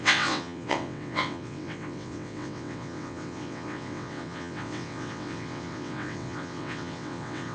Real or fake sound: fake